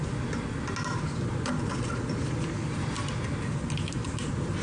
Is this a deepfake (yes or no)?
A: no